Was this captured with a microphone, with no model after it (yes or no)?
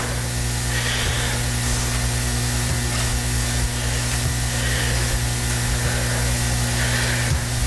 yes